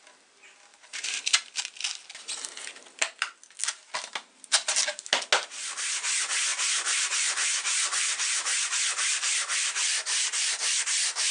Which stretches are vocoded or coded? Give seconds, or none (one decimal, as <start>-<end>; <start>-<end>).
0.7-1.6; 6.5-11.3